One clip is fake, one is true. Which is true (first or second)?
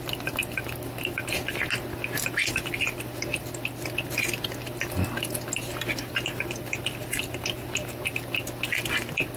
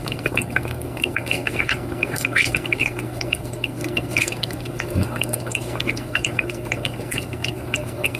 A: first